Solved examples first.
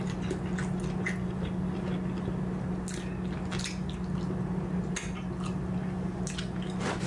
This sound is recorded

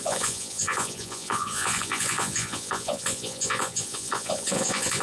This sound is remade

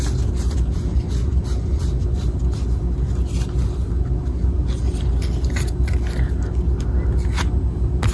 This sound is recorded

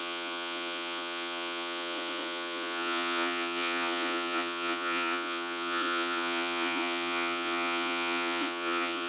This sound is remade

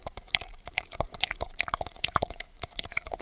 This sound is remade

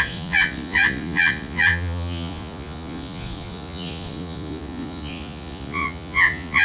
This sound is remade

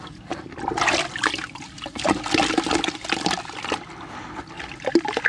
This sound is recorded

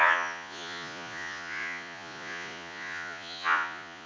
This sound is remade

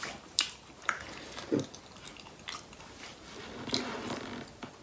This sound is recorded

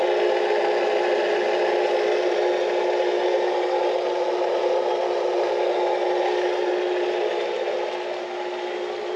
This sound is recorded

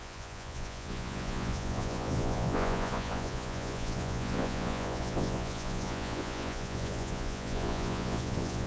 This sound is remade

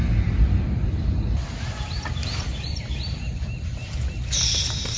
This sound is recorded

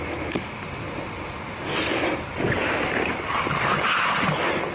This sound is recorded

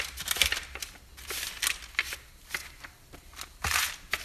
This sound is recorded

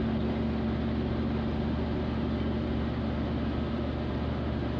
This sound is recorded